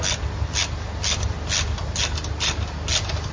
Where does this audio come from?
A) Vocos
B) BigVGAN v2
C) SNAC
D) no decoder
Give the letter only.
D